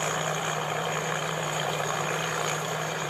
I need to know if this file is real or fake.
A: fake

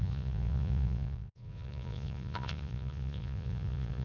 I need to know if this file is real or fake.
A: fake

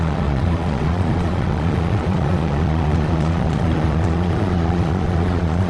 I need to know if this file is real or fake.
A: fake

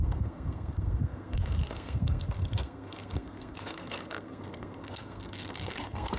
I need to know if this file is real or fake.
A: fake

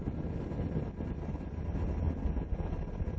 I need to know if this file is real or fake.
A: real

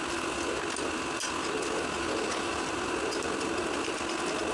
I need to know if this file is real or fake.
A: real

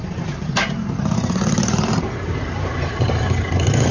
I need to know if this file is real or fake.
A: fake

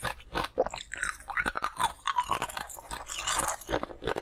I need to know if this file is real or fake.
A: real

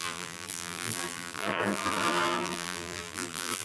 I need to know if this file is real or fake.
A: fake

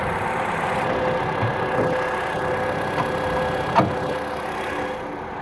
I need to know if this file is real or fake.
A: real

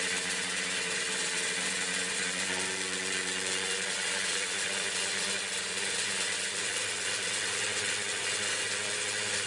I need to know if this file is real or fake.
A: fake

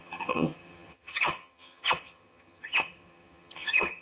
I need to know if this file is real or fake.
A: fake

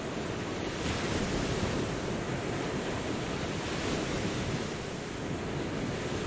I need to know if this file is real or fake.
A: real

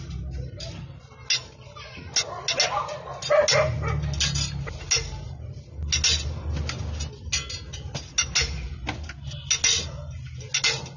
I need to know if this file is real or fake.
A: real